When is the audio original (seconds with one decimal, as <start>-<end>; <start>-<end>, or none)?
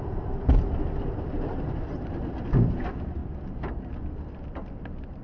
0.0-1.0; 2.1-5.2